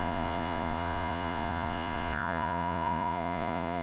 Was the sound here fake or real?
fake